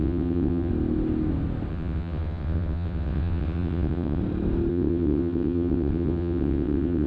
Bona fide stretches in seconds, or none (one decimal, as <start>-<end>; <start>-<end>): 0.7-1.7; 4.2-4.7

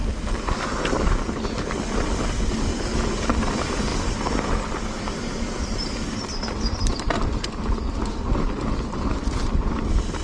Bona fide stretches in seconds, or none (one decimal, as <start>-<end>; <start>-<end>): 0.0-10.2

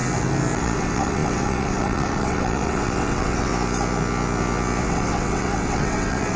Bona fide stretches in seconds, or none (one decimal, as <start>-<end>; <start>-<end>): 0.0-0.6; 3.5-4.8

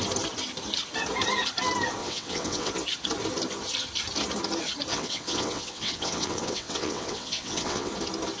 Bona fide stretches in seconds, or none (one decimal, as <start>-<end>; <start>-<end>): 0.0-2.0; 2.7-4.9; 7.9-8.4

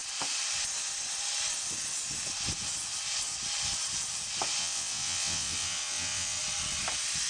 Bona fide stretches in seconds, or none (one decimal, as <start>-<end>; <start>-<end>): 0.0-4.6; 6.4-7.3

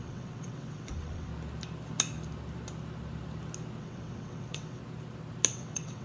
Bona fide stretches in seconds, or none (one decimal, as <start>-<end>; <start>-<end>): 1.3-3.8; 4.8-5.5

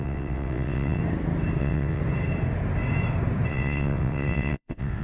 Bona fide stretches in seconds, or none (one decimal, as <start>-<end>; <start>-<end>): 1.0-1.6; 2.0-3.5

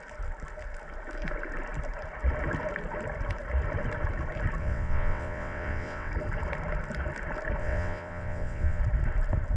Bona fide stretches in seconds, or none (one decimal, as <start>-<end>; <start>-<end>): 0.0-4.6; 6.1-7.6; 8.8-9.6